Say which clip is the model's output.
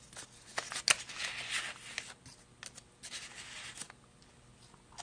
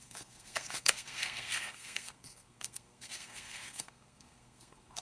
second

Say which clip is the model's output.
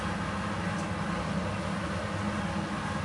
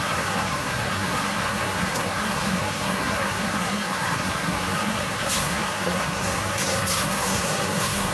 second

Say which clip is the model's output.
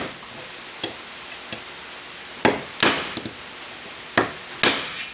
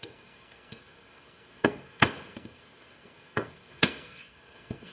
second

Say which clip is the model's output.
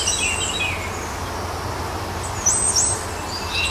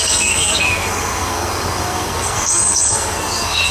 second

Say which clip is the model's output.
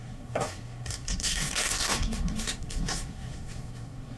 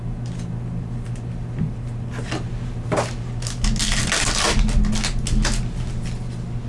first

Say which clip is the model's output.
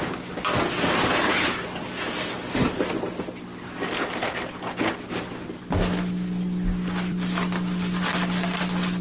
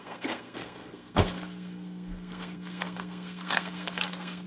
second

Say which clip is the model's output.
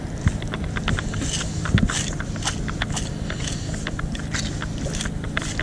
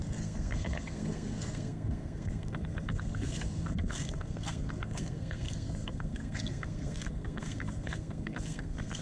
second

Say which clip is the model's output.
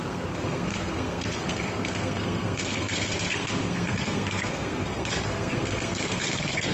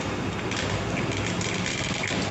first